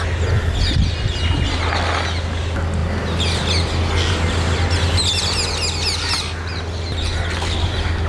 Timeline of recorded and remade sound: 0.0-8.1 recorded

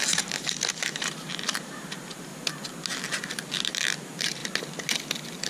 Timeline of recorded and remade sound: 0.0-2.3 remade; 2.3-3.0 recorded; 3.0-4.4 remade; 4.4-5.5 recorded

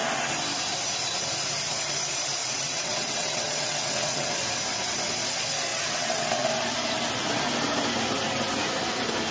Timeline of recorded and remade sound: 0.0-2.4 recorded; 2.4-4.3 remade; 4.3-5.7 recorded; 5.7-6.5 remade; 6.5-9.3 recorded

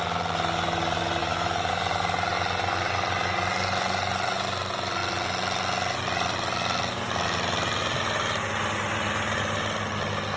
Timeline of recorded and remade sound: 0.0-1.2 recorded; 1.2-1.7 remade; 1.7-10.4 recorded

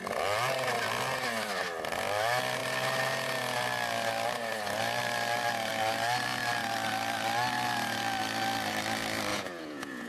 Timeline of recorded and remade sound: 0.0-9.3 recorded; 9.3-10.1 remade

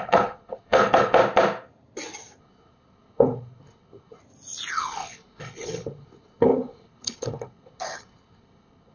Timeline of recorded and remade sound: 0.0-1.2 remade; 1.2-2.4 recorded; 2.4-4.2 remade; 4.2-4.7 recorded; 4.7-8.9 remade

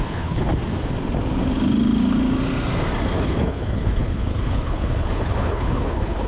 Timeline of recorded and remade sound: 0.0-0.5 remade; 0.5-3.2 recorded; 3.2-6.3 remade